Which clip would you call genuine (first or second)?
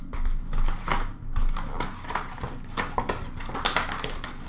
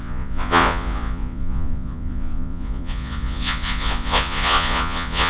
first